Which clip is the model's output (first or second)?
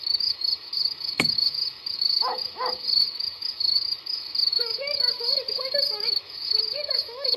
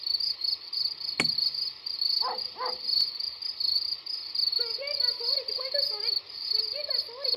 first